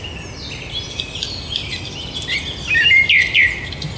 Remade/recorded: recorded